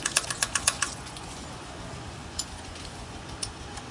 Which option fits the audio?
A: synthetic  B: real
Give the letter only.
A